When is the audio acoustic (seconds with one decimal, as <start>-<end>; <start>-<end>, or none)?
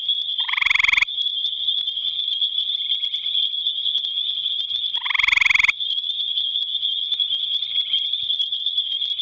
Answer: 0.0-9.2